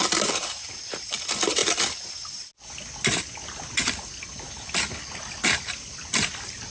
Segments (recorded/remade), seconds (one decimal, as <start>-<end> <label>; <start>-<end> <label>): 0.0-6.7 recorded